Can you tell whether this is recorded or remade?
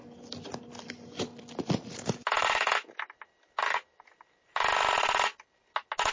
recorded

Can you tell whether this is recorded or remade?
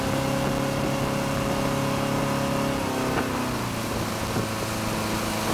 recorded